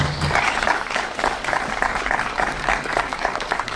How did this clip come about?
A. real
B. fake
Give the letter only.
B